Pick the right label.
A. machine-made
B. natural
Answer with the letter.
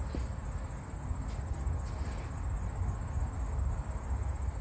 B